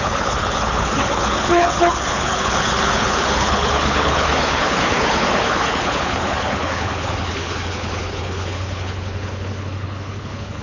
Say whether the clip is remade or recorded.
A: remade